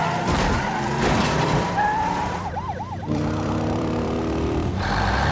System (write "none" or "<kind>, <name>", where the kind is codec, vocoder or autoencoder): vocoder, BigVGAN v2